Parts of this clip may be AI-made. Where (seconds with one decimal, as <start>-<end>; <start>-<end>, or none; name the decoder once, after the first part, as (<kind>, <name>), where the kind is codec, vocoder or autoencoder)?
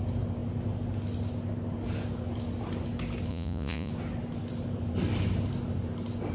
3.3-3.9 (vocoder, Vocos)